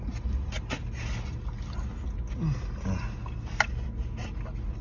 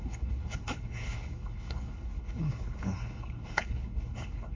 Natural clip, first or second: first